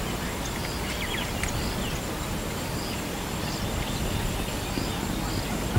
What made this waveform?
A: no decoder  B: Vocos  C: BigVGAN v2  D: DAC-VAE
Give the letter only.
A